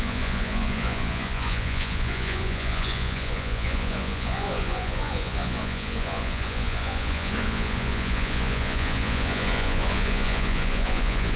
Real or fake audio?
fake